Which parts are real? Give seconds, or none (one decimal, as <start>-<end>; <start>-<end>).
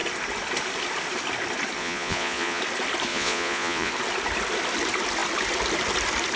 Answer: 0.0-1.8; 2.6-3.1; 3.9-6.4